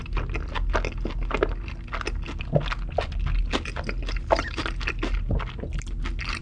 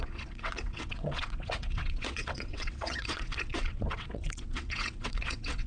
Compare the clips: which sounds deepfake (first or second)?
second